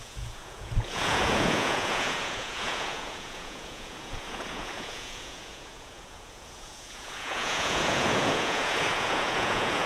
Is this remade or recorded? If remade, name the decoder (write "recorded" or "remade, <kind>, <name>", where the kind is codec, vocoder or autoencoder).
remade, vocoder, Vocos